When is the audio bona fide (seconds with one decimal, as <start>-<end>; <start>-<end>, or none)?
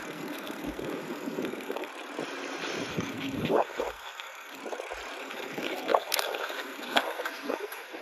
1.9-2.9; 4.6-5.2